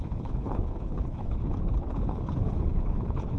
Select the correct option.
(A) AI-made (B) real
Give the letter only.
A